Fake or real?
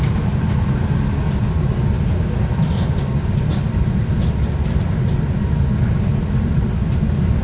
real